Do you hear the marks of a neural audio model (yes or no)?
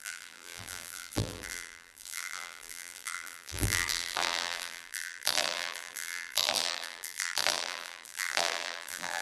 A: yes